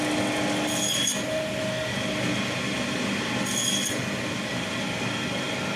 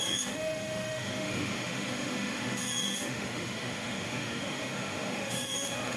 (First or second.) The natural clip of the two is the first